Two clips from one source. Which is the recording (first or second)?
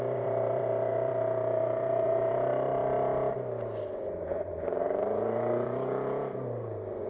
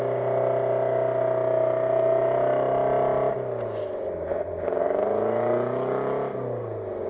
second